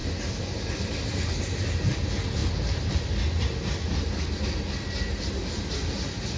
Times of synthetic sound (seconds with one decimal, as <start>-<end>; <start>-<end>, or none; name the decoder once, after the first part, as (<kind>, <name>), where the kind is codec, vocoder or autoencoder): none